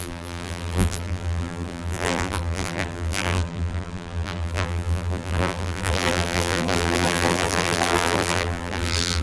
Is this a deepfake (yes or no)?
yes